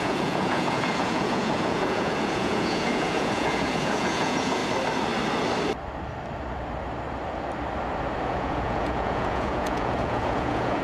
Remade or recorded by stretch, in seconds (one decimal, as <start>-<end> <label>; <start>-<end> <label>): 0.0-4.6 remade; 4.6-8.2 recorded; 8.2-10.8 remade